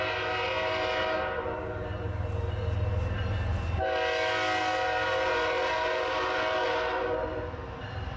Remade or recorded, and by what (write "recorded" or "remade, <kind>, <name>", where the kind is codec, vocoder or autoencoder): recorded